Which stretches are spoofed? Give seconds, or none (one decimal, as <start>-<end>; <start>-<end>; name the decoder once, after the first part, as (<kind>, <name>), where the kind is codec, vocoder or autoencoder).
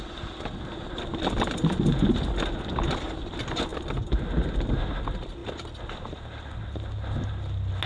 none